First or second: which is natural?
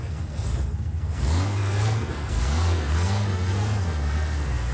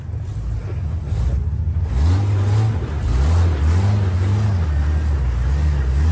second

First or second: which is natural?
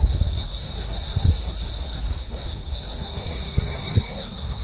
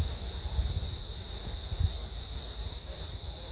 second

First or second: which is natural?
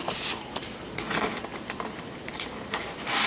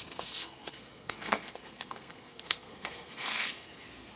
first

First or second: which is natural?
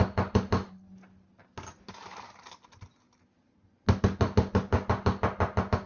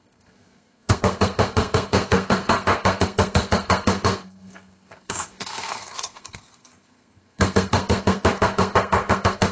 first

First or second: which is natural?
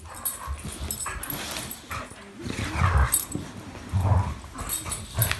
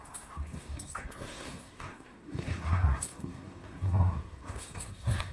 first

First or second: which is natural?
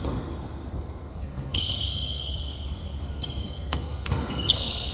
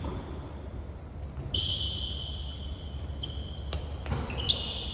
second